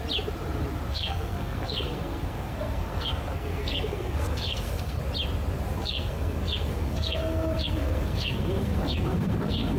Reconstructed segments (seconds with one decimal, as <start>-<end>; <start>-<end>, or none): 0.9-5.0; 5.8-9.8